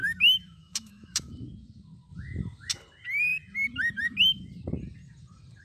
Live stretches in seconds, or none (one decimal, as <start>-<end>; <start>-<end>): 1.3-5.6